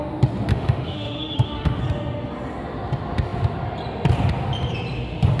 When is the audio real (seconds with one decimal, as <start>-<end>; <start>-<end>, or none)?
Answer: 0.0-0.5; 1.8-5.4